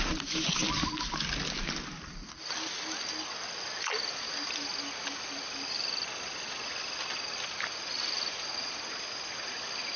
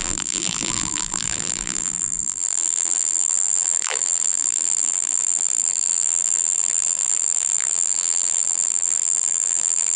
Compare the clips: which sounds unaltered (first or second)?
first